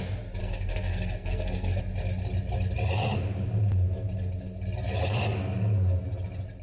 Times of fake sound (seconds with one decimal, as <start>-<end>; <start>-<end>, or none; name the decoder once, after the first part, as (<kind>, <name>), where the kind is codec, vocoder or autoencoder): 0.4-1.8 (codec, SNAC)